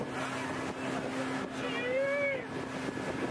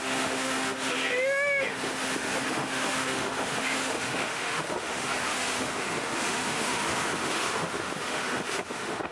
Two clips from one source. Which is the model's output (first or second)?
second